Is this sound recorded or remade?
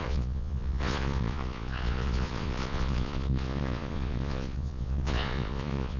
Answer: remade